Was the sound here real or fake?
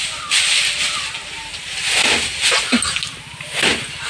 real